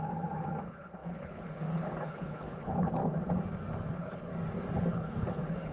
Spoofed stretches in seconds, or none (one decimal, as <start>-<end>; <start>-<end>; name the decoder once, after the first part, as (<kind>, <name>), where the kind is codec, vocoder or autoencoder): 0.0-3.0 (codec, HILCodec); 3.9-4.3; 4.9-5.7